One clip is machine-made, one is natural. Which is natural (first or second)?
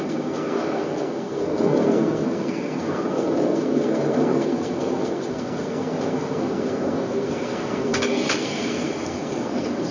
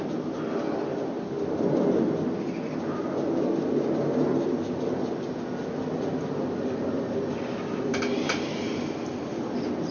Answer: second